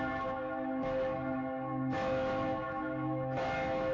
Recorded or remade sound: remade